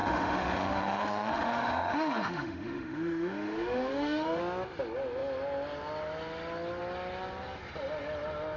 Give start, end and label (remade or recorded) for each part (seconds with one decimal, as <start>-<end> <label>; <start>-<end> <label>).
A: 0.0-4.4 remade; 4.4-8.6 recorded